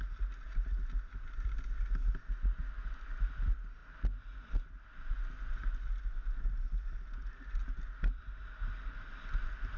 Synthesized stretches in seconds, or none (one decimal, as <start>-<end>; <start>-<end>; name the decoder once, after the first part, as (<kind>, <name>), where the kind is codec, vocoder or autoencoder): none